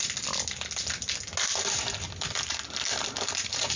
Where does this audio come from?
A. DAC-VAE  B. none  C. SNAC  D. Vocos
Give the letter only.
B